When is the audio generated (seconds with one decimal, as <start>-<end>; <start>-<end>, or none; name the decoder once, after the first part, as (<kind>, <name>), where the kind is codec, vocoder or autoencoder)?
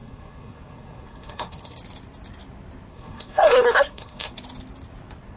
0.0-1.8 (codec, SNAC); 2.9-4.3